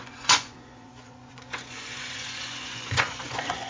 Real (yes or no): no